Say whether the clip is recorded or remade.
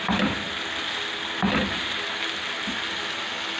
recorded